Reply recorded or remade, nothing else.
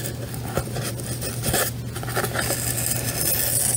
recorded